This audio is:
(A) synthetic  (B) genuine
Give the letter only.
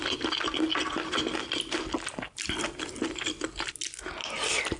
B